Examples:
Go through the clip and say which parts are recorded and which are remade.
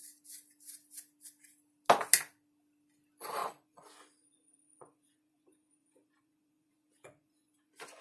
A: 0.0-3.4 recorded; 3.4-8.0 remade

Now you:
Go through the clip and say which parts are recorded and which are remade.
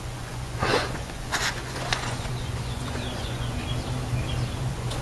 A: 0.0-3.6 remade; 3.6-4.6 recorded; 4.6-5.0 remade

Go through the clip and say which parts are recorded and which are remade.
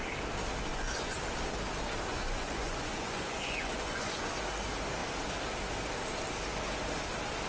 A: 0.0-0.7 recorded; 0.7-1.2 remade; 1.2-2.1 recorded; 2.1-4.3 remade; 4.3-7.5 recorded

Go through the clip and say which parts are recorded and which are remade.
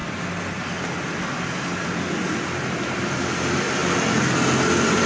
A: 0.0-5.1 recorded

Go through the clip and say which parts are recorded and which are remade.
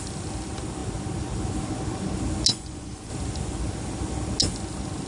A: 0.0-2.5 recorded; 2.5-3.1 remade; 3.1-5.1 recorded